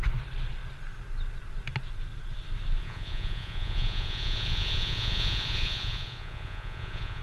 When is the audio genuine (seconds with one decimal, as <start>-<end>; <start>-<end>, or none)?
0.0-2.8